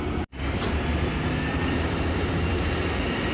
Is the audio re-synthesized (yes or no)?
yes